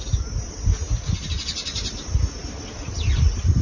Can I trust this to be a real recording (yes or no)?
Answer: yes